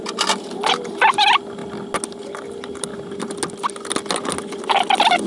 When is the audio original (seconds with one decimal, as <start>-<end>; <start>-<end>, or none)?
0.0-5.3